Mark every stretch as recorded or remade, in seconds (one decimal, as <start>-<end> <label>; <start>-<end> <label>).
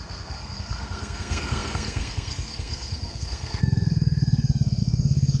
0.0-5.4 remade